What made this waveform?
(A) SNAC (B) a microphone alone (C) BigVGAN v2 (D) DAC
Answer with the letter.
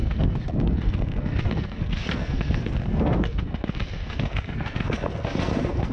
A